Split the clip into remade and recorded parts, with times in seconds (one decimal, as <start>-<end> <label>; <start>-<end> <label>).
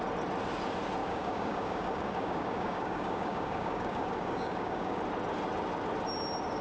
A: 0.0-1.0 recorded; 1.0-5.0 remade; 5.0-6.6 recorded